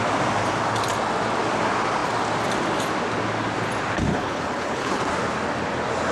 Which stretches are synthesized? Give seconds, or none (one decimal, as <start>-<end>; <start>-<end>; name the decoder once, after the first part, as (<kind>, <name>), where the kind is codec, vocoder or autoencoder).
4.1-5.0 (codec, HILCodec)